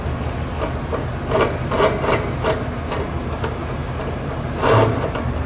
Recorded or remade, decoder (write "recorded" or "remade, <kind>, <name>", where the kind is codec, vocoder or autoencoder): recorded